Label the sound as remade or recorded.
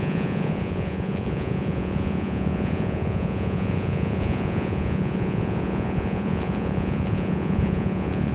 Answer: remade